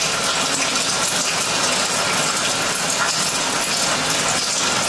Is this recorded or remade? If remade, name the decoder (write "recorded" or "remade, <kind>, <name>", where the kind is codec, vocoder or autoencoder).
recorded